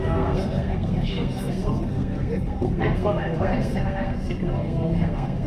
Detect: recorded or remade remade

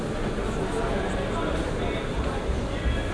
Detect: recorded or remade recorded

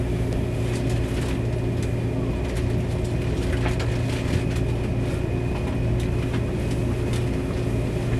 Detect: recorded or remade recorded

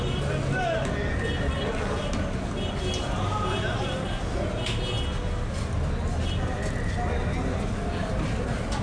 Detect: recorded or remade recorded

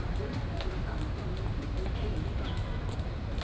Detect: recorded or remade recorded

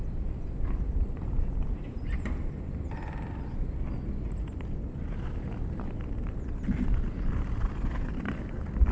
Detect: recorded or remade recorded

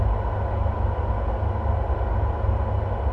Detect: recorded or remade recorded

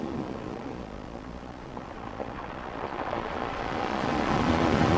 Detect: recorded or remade remade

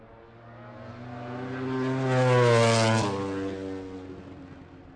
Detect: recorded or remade recorded